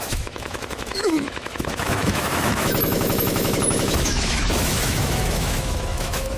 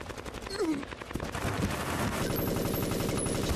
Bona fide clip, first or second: second